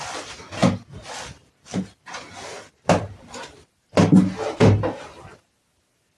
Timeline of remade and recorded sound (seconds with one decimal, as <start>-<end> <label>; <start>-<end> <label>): 0.0-6.2 recorded